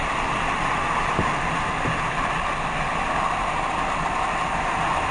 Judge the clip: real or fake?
real